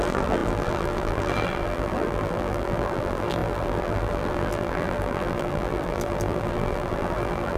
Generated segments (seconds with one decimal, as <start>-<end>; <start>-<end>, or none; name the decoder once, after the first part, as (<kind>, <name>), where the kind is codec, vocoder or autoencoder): 0.0-7.6 (vocoder, BigVGAN v2)